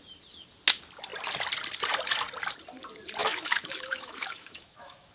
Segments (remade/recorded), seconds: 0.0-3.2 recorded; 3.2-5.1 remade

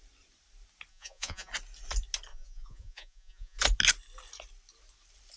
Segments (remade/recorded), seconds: 0.0-0.9 recorded; 0.9-1.5 remade; 1.5-2.3 recorded; 2.3-3.6 remade; 3.6-5.4 recorded

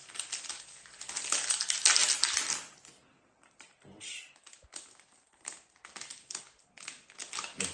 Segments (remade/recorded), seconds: 0.0-7.7 recorded

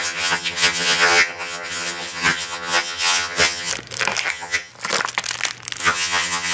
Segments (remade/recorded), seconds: 0.0-3.7 remade; 3.7-4.3 recorded; 4.3-4.7 remade; 4.7-5.8 recorded; 5.8-6.5 remade

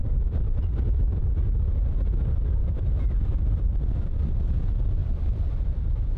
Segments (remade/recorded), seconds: 0.0-1.2 remade; 1.2-2.6 recorded; 2.6-3.8 remade; 3.8-5.0 recorded; 5.0-5.7 remade; 5.7-6.2 recorded

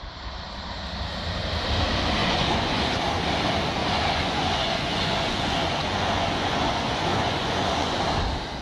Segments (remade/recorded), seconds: 0.0-2.2 recorded; 2.2-3.0 remade; 3.0-3.8 recorded; 3.8-8.0 remade; 8.0-8.6 recorded

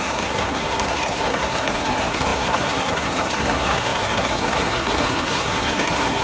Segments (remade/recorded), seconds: 0.0-6.2 remade

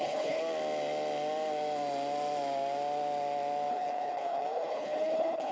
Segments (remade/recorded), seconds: 0.0-0.4 remade; 0.4-3.7 recorded; 3.7-5.5 remade